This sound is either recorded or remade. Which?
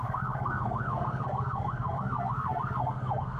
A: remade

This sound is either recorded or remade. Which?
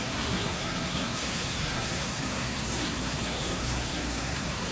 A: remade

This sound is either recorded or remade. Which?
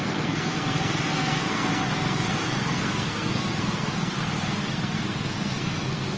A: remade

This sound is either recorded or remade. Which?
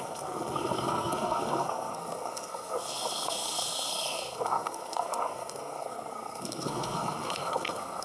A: remade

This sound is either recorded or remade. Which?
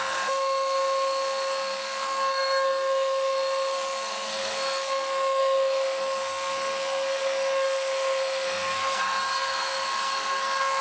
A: remade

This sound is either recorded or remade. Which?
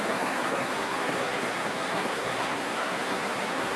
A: remade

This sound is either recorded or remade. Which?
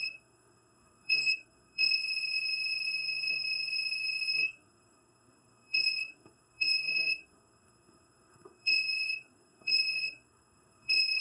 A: remade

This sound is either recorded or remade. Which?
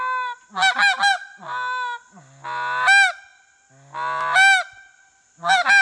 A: recorded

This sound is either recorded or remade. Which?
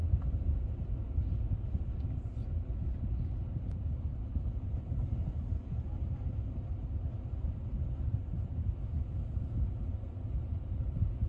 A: recorded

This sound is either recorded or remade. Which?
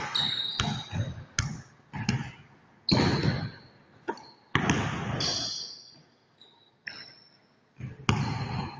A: recorded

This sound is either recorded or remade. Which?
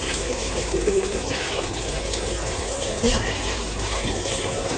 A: remade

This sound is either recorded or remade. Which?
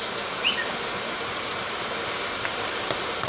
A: recorded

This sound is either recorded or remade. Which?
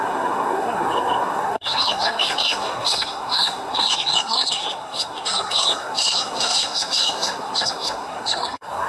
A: remade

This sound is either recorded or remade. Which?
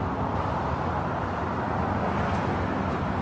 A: recorded